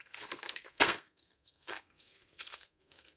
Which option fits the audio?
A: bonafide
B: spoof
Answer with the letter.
B